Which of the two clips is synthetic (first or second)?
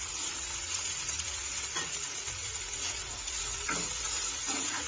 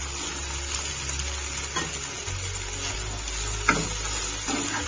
first